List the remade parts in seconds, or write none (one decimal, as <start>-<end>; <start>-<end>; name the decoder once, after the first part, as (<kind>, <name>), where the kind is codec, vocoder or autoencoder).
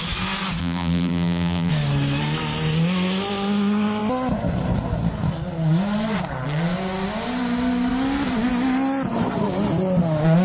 0.6-1.7 (vocoder, BigVGAN v2)